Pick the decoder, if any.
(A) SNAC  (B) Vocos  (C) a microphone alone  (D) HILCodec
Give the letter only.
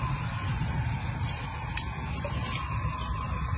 C